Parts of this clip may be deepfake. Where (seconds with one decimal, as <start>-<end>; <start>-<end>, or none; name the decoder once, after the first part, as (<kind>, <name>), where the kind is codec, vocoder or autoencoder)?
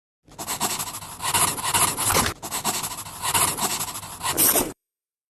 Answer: 3.2-3.7 (vocoder, BigVGAN v2); 4.4-5.3